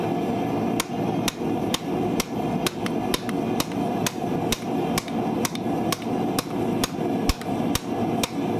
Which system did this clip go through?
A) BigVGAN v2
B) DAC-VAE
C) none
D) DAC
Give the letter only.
C